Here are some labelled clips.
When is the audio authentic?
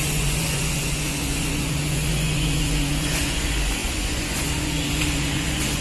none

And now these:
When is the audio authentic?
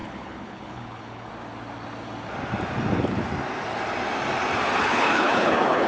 1.3-4.8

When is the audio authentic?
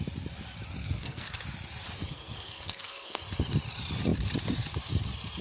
0.0-0.8; 1.3-2.1; 3.2-5.4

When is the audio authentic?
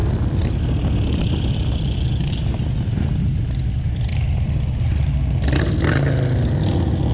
2.2-7.1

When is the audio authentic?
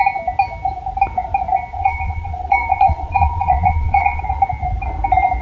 0.0-1.7; 4.2-5.4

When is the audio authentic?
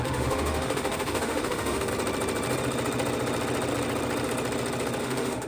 1.9-5.0